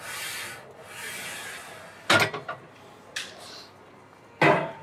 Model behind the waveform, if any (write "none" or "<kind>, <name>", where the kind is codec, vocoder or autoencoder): none